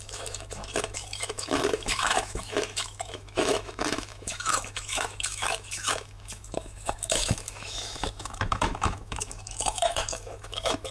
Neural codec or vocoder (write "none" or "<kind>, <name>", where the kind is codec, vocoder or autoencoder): autoencoder, DAC-VAE